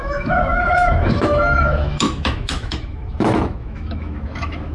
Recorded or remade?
remade